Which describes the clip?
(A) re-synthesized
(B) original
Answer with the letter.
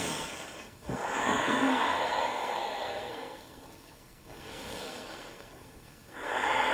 A